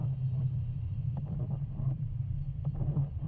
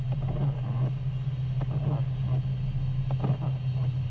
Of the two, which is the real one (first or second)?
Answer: second